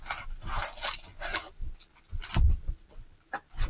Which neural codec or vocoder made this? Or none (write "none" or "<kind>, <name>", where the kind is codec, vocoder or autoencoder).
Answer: none